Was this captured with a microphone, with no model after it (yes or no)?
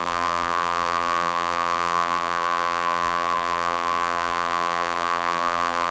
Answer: no